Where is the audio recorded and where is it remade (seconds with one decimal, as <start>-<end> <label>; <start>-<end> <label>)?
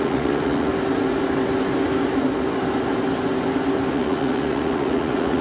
0.0-0.7 remade; 0.7-3.9 recorded; 3.9-5.4 remade